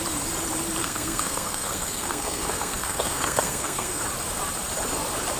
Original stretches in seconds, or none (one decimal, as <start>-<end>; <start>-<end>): 0.0-0.8; 4.0-5.4